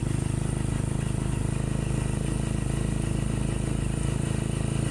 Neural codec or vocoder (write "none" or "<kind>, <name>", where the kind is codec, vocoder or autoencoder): none